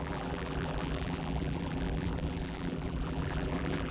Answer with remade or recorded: remade